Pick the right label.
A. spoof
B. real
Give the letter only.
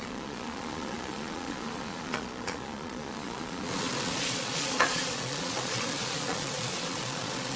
A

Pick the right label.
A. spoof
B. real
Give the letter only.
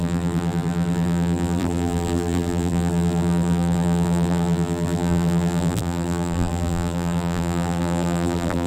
A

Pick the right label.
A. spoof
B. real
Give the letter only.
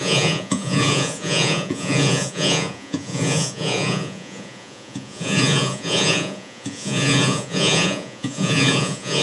A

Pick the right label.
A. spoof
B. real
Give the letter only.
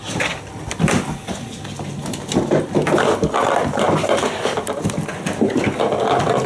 B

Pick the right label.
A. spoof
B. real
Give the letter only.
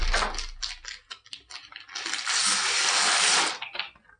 B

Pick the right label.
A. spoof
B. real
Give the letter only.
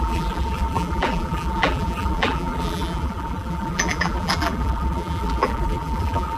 A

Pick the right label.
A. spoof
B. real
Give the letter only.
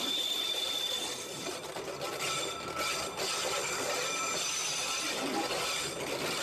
B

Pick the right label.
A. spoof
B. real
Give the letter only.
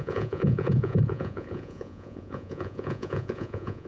A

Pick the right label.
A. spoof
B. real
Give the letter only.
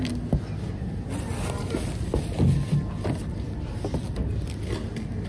B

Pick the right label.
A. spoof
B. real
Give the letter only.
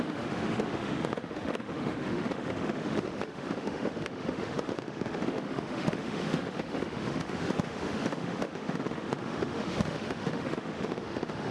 A